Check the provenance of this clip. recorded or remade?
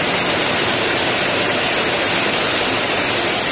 recorded